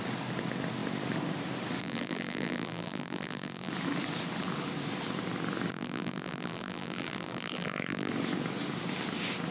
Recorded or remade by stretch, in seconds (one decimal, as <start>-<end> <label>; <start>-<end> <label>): 0.0-1.8 recorded; 1.8-3.7 remade; 3.7-5.7 recorded; 5.7-8.1 remade; 8.1-9.5 recorded